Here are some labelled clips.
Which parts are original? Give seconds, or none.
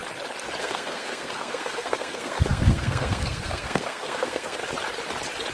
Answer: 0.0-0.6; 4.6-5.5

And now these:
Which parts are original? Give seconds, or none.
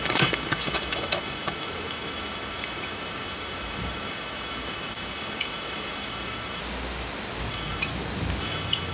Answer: 6.6-7.5; 7.9-8.4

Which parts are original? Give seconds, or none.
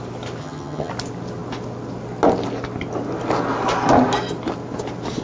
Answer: 0.0-0.4; 0.9-5.2